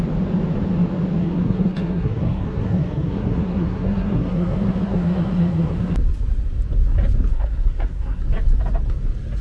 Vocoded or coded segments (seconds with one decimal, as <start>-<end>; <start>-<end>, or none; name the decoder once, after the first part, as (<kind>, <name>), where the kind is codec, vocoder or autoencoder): 1.2-5.9 (codec, SNAC); 7.3-8.2